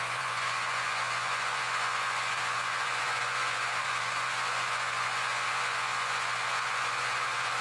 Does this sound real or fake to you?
fake